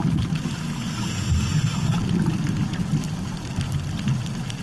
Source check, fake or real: real